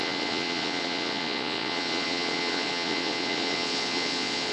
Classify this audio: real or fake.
fake